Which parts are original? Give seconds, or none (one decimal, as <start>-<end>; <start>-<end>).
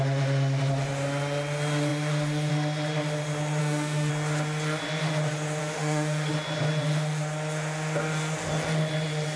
0.0-3.6; 4.1-5.6; 6.3-9.4